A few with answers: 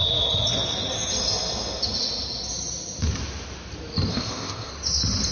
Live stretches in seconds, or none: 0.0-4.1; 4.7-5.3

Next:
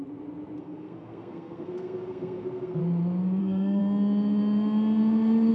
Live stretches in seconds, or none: 0.0-0.6; 2.8-3.4; 3.8-5.5

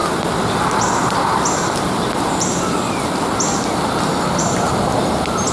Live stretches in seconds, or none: 0.0-5.5

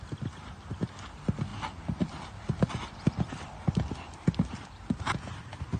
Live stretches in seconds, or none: 0.0-1.5; 5.0-5.8

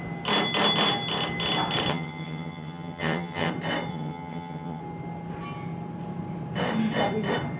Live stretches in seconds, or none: 0.0-1.9; 3.5-3.9; 4.8-7.6

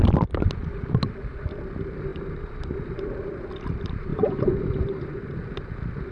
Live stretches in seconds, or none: 0.0-4.1; 5.2-6.1

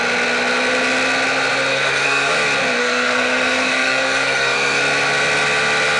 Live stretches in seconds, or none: 0.0-1.7; 2.3-2.8; 4.8-6.0